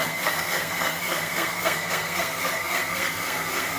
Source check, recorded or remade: remade